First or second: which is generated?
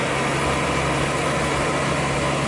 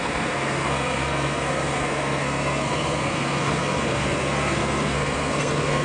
second